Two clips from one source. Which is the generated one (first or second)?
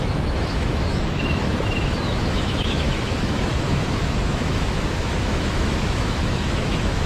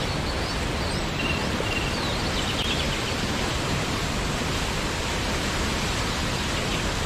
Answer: first